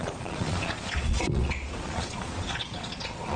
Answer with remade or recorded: remade